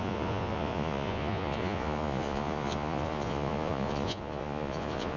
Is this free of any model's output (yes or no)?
no